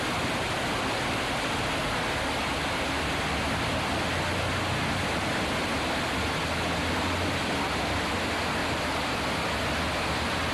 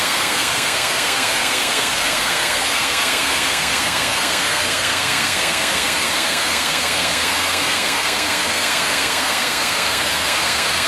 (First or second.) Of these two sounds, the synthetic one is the second